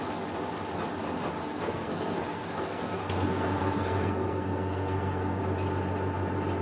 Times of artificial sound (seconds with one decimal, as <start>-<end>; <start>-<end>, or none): 1.4-5.4